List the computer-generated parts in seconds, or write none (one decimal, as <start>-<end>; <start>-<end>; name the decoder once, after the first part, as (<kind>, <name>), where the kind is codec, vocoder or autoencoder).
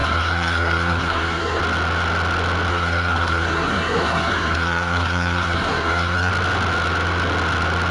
0.0-1.6 (codec, SNAC); 2.7-6.3